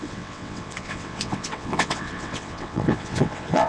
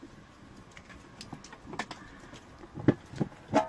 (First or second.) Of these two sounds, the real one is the second